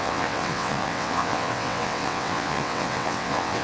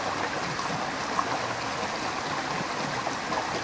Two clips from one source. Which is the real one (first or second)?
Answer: second